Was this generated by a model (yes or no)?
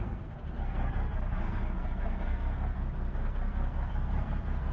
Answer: yes